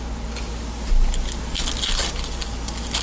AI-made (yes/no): no